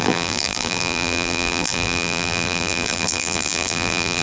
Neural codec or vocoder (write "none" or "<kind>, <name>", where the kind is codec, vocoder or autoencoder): vocoder, BigVGAN v2